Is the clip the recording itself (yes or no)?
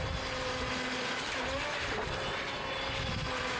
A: yes